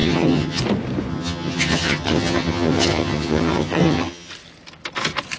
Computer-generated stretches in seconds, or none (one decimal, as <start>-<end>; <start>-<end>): 0.0-0.6; 1.1-4.3